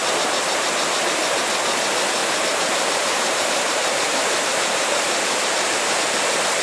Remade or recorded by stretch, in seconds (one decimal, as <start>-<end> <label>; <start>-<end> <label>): 0.0-2.2 recorded; 2.2-6.0 remade; 6.0-6.6 recorded